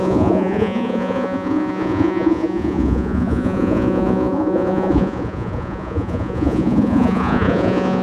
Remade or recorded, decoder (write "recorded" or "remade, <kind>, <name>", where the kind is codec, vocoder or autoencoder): remade, vocoder, Vocos